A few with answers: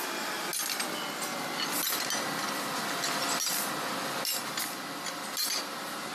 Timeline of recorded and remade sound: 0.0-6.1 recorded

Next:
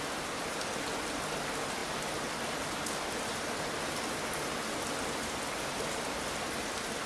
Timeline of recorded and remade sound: 0.0-7.1 recorded

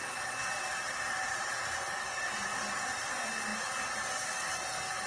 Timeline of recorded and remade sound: 0.0-5.1 recorded

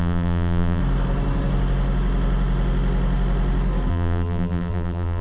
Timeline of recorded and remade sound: 0.0-0.8 remade; 0.8-3.9 recorded; 3.9-5.2 remade